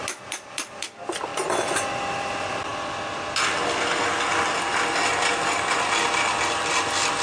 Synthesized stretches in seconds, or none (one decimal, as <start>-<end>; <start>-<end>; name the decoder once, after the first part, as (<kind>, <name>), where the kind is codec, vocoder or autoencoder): 0.0-1.3 (vocoder, BigVGAN v2); 2.2-2.7; 6.6-7.2